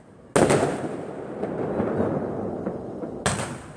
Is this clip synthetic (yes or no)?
no